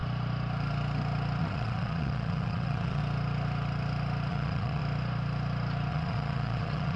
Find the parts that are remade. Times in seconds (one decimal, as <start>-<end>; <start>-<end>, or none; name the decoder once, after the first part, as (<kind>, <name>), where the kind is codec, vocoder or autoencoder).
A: 1.4-3.0 (vocoder, Vocos); 4.3-4.8; 5.9-7.0